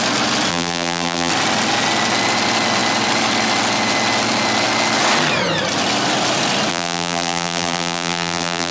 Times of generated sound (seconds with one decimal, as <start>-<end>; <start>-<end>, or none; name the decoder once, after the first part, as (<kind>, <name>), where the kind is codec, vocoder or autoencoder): 0.5-1.3 (vocoder, BigVGAN v2); 6.7-8.7